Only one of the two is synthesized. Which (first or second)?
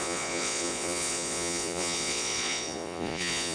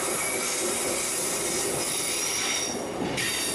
first